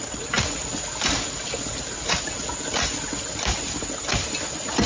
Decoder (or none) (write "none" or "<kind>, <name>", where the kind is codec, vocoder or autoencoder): none